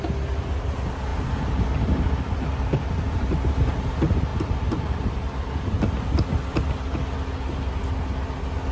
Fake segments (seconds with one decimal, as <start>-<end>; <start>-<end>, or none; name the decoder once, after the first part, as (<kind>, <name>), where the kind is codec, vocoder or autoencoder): none

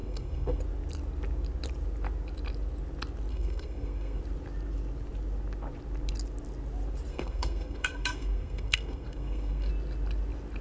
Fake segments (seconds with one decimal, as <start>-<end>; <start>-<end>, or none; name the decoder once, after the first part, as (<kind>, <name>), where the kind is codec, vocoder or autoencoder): 0.0-0.6 (codec, SNAC); 3.3-4.2; 7.1-9.7